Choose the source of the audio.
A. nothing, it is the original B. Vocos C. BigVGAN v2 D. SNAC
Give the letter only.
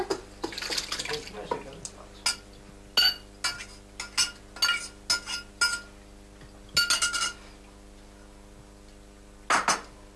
A